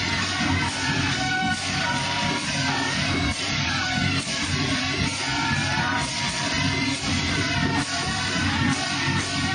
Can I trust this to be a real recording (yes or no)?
no